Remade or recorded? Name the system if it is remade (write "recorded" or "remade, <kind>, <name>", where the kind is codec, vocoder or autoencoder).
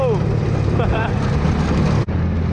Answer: recorded